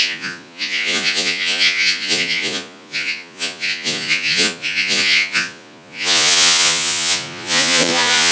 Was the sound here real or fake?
fake